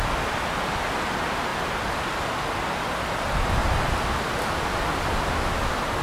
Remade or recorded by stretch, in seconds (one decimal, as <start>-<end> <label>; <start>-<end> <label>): 0.0-1.5 recorded; 1.5-2.7 remade; 2.7-6.0 recorded